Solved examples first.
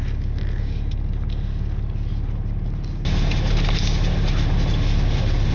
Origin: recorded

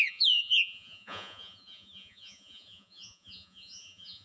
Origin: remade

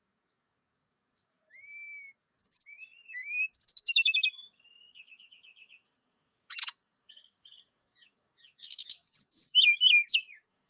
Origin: remade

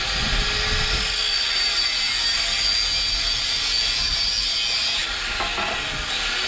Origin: recorded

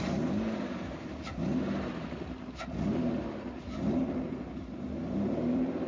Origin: remade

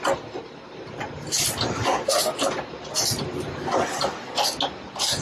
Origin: recorded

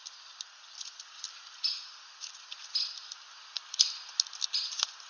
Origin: recorded